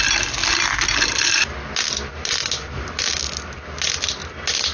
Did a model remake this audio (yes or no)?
no